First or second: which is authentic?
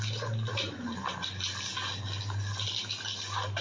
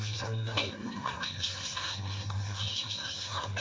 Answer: first